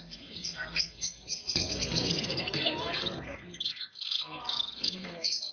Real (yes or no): no